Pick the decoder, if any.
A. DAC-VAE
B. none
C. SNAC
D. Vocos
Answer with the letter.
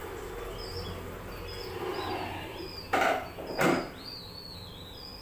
B